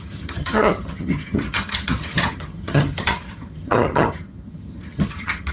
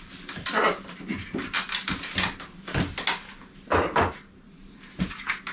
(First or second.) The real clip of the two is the second